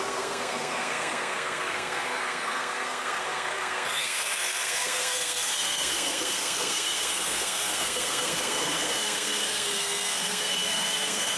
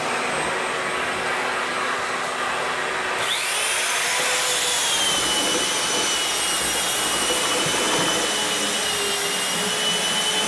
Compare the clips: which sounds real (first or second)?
second